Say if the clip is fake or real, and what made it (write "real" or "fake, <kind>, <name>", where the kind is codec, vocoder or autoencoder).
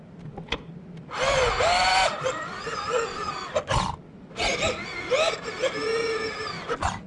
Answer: real